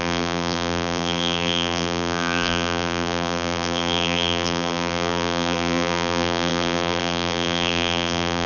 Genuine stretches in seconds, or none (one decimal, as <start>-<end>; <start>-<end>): none